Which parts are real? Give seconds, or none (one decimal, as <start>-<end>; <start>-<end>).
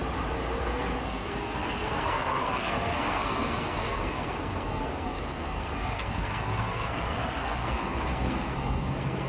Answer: 0.0-0.6